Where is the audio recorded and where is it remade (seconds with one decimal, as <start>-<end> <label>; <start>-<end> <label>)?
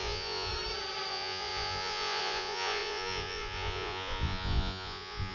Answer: 0.0-0.5 remade; 0.5-1.1 recorded; 1.1-5.3 remade